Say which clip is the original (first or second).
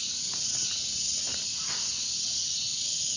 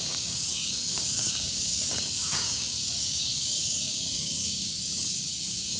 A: first